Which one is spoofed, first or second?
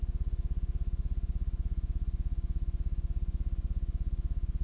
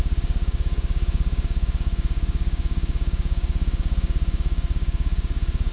second